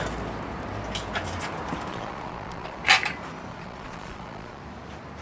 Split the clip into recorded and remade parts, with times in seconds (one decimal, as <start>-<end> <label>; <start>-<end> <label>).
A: 0.0-1.9 recorded; 1.9-2.8 remade; 2.8-3.5 recorded; 3.5-4.6 remade; 4.6-5.2 recorded